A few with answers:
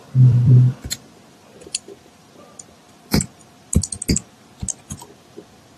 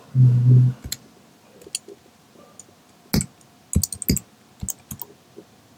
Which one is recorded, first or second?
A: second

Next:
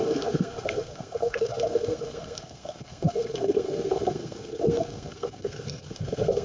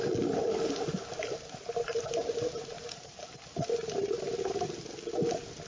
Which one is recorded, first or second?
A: second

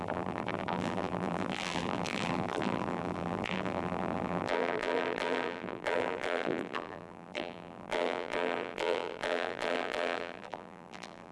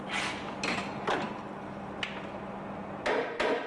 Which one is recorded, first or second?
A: second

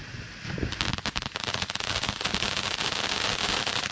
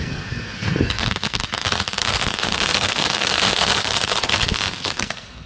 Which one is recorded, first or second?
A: first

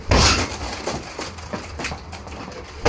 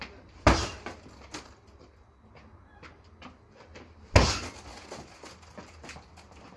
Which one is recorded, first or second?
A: second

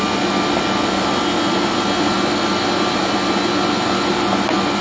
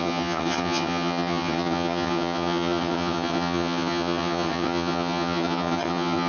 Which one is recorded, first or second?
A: first